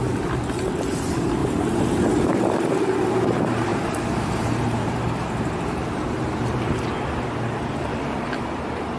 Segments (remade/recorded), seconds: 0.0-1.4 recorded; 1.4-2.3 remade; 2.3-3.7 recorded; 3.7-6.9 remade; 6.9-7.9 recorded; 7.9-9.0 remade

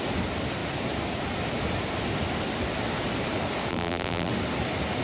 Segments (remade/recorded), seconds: 0.0-3.7 recorded; 3.7-4.3 remade; 4.3-5.0 recorded

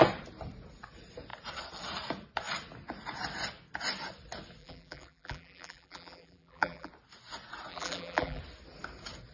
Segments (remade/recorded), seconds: 0.0-4.6 recorded; 4.6-6.9 remade; 6.9-7.7 recorded; 7.7-8.4 remade; 8.4-9.3 recorded

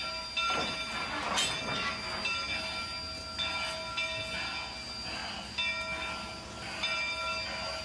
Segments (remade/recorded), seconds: 0.0-7.8 recorded

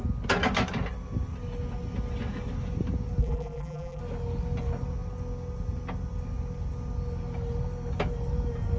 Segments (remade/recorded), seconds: 0.0-3.2 recorded; 3.2-4.0 remade; 4.0-8.8 recorded